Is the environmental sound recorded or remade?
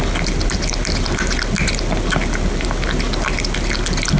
recorded